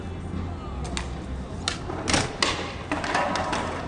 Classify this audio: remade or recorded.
recorded